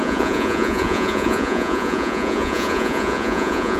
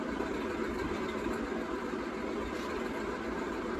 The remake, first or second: first